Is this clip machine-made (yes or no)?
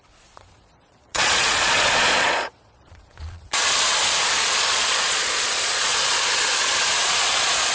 yes